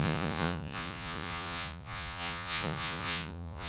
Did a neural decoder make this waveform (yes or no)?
yes